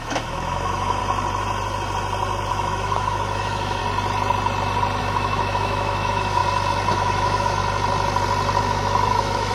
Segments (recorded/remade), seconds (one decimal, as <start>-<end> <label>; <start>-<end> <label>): 0.0-1.0 remade; 1.0-2.5 recorded; 2.5-3.8 remade; 3.8-5.0 recorded; 5.0-6.4 remade; 6.4-6.9 recorded; 6.9-7.6 remade; 7.6-8.6 recorded; 8.6-9.5 remade